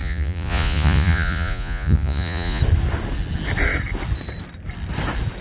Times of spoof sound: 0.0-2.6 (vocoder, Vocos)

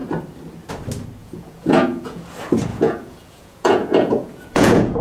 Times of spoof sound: 1.2-2.2 (vocoder, Vocos); 2.7-5.0

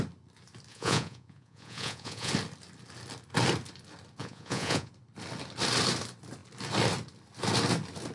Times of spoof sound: 0.7-2.3 (vocoder, Vocos); 4.2-4.9

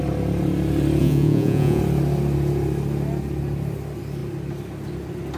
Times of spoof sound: 1.0-1.8 (vocoder, Vocos)

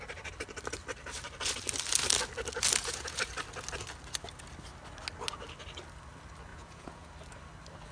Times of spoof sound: 2.8-3.3 (vocoder, Vocos); 6.5-7.1

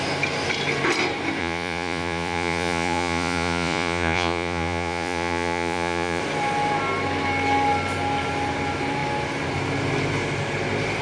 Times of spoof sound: 1.4-6.2 (vocoder, Vocos)